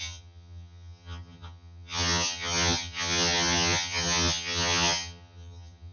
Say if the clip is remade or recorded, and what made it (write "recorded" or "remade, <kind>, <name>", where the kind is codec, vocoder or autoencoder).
remade, vocoder, HiFi-GAN